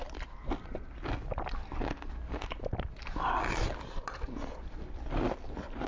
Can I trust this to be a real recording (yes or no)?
yes